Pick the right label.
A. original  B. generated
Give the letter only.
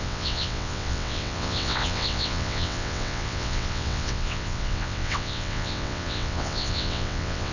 B